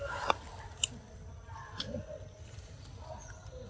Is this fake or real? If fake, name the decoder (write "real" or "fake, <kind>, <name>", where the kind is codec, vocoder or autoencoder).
real